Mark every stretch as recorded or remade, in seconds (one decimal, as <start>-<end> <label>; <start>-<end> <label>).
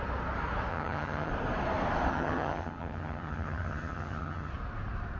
0.0-0.7 recorded; 0.7-1.3 remade; 1.3-2.1 recorded; 2.1-4.5 remade; 4.5-5.2 recorded